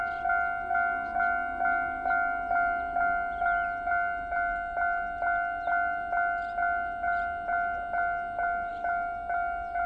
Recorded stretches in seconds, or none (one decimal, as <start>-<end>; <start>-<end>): 0.0-9.9